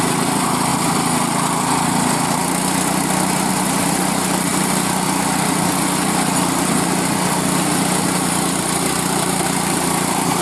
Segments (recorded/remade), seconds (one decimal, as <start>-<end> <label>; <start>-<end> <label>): 0.0-0.7 remade; 0.7-3.5 recorded; 3.5-4.5 remade; 4.5-8.9 recorded; 8.9-10.4 remade